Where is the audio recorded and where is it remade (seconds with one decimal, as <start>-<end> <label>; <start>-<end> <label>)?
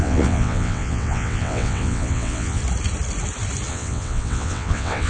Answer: 0.0-2.6 remade; 2.6-3.7 recorded; 3.7-5.1 remade